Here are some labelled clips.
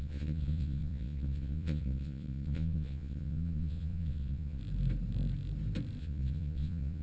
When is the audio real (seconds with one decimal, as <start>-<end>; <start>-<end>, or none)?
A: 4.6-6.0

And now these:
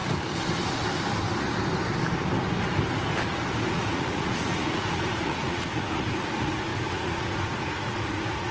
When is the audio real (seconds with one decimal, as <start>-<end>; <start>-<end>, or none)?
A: 0.0-3.7

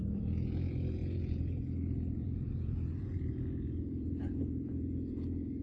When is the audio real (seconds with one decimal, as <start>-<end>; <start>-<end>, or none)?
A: none

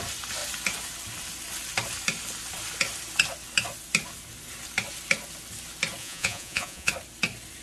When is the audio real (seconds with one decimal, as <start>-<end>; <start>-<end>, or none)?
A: 0.0-6.0; 6.9-7.6

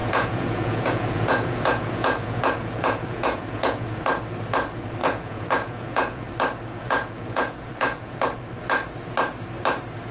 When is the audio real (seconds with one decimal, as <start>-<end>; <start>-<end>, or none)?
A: 4.0-5.0; 6.3-6.7; 8.2-10.1